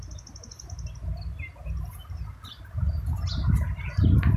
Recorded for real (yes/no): yes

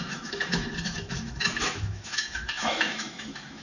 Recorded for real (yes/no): no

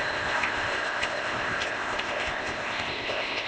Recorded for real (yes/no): no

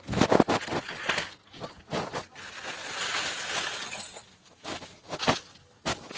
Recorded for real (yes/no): yes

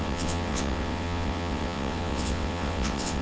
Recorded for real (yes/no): no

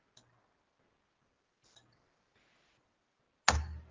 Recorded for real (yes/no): yes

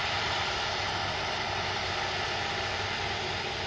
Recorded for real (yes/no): no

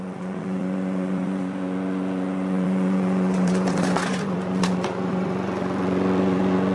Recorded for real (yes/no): no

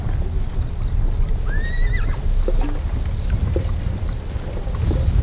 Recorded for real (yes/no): yes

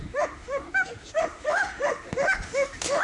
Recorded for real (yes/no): no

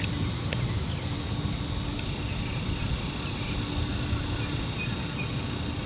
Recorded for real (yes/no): yes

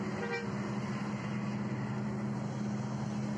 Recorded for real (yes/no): yes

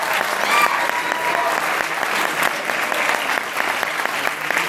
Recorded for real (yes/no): yes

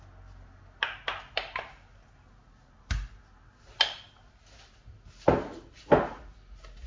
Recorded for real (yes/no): yes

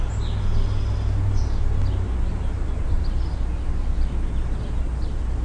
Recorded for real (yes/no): yes